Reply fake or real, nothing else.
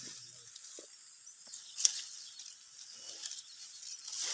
real